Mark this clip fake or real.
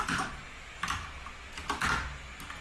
real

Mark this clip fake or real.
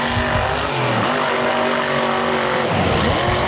real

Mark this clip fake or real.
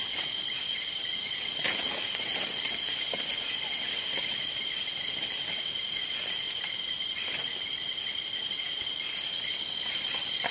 fake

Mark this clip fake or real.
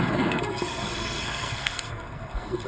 fake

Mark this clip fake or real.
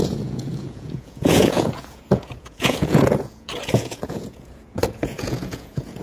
fake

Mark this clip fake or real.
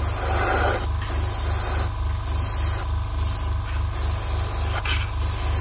real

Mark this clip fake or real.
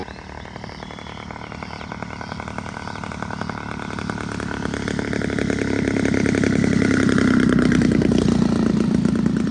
real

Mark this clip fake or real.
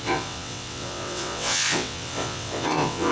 fake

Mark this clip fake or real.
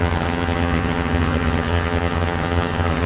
fake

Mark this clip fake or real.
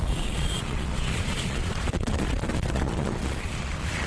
fake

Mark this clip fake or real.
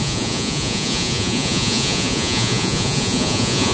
fake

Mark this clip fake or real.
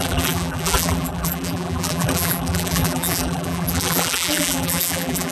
fake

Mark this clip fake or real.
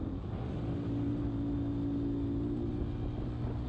real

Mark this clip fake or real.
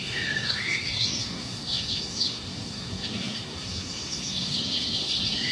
fake